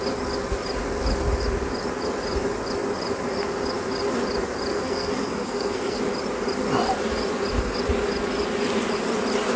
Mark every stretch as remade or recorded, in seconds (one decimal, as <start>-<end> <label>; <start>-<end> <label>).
0.0-4.7 recorded; 4.7-6.0 remade; 6.0-9.6 recorded